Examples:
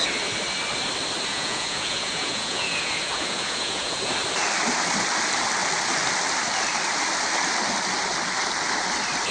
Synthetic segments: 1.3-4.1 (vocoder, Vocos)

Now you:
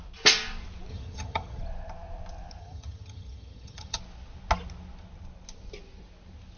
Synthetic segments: 0.9-1.6 (vocoder, HiFi-GAN); 2.6-4.0